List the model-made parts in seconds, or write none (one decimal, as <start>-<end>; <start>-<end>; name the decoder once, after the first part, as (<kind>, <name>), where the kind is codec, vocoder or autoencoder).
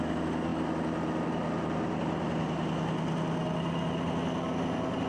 none